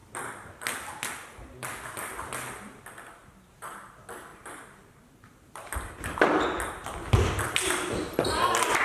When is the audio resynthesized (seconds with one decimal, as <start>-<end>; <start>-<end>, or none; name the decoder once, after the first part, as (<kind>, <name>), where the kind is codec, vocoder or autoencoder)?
0.0-0.5 (vocoder, BigVGAN v2); 3.2-3.7; 4.3-5.9